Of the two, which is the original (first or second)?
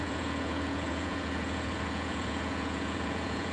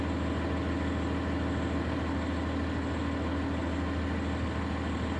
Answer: second